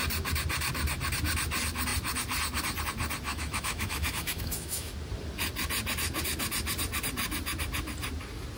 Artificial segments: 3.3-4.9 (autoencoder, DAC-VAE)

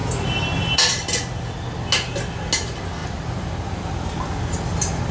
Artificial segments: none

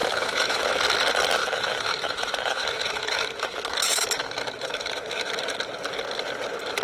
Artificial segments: 0.0-0.7 (autoencoder, DAC-VAE); 1.4-5.4

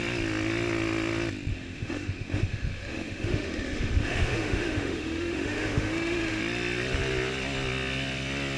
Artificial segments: 1.5-6.4 (autoencoder, DAC-VAE)

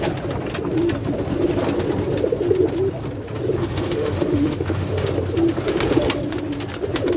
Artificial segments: 3.6-5.1 (autoencoder, DAC-VAE)